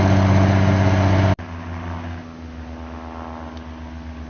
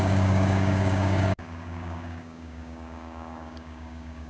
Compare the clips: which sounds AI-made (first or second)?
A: second